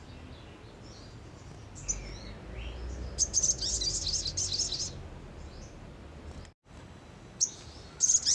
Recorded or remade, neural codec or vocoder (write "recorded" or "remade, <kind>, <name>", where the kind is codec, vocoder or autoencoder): recorded